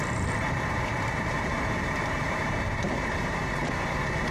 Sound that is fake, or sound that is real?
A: fake